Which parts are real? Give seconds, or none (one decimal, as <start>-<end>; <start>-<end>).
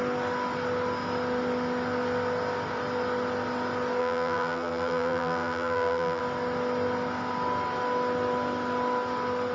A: 0.0-4.0; 6.2-9.5